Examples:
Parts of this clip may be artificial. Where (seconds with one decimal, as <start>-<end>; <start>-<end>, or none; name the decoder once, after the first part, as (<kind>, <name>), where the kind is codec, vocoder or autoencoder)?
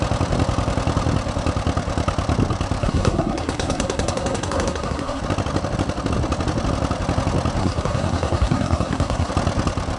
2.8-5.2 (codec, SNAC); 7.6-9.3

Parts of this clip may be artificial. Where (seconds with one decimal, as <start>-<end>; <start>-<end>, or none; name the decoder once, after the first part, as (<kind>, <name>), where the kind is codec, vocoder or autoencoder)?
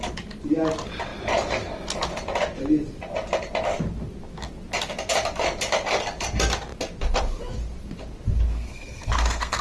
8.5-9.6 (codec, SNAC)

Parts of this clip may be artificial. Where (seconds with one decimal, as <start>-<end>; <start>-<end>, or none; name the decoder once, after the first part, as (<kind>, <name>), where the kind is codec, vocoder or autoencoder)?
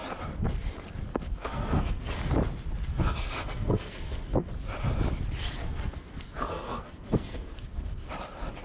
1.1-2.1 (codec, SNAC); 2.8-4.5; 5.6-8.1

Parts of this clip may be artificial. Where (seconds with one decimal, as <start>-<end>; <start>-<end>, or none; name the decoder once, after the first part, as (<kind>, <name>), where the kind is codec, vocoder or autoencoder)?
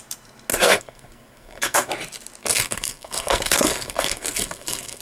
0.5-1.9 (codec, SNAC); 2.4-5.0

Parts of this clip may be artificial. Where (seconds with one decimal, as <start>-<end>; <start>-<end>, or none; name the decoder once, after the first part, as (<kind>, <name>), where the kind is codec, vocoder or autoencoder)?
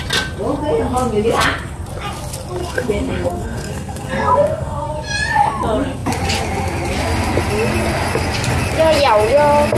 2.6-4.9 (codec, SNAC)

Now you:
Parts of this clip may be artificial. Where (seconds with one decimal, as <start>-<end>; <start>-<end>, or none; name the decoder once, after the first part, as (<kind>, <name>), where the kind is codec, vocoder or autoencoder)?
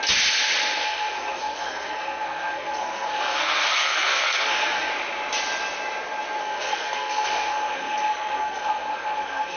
0.8-4.9 (codec, SNAC); 6.4-9.6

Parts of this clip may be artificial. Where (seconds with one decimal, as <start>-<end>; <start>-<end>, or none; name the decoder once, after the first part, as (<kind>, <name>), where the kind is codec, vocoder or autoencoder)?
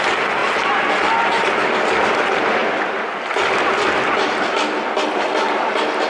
none